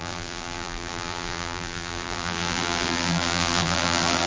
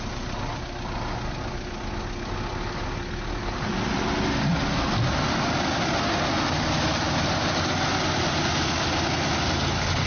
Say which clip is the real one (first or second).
second